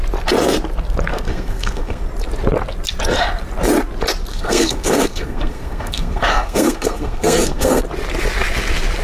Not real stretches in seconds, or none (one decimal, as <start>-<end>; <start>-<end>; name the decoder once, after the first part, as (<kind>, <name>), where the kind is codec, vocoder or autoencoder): 1.1-2.0 (codec, SNAC); 4.3-7.8